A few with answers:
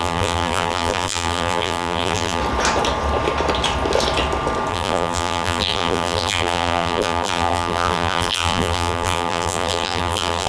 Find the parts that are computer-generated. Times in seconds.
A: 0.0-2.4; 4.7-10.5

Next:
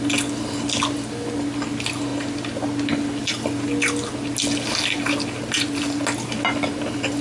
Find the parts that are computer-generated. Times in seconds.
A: none

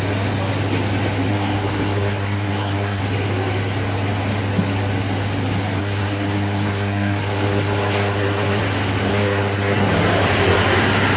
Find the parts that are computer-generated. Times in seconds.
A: 1.3-3.0; 5.8-8.6; 9.1-9.9

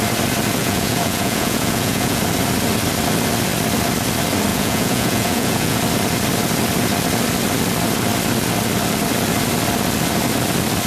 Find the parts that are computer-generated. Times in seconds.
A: 0.6-2.2; 4.5-5.8